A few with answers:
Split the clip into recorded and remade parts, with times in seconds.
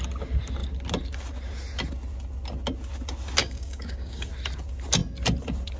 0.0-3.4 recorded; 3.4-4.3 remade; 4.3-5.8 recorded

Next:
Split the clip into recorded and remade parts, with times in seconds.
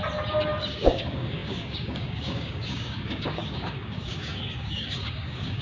0.0-0.6 recorded; 0.6-5.6 remade